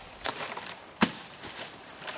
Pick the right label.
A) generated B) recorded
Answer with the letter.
B